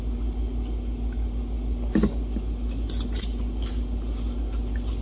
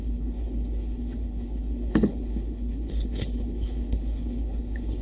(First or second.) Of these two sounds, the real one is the first